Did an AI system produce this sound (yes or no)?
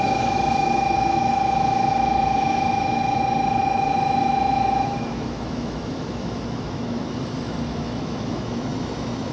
yes